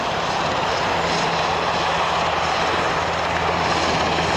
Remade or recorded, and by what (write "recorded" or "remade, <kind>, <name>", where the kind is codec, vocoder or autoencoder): recorded